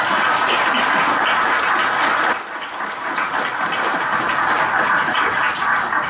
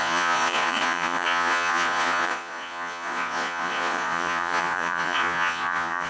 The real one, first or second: first